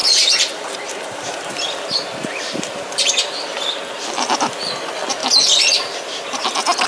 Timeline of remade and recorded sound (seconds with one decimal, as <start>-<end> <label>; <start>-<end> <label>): 0.0-3.1 remade; 3.1-6.9 recorded